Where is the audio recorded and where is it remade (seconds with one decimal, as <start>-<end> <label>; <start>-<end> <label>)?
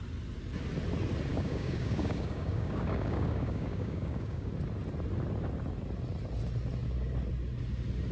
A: 0.0-1.3 recorded; 1.3-4.5 remade; 4.5-8.1 recorded